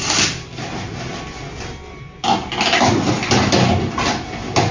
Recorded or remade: recorded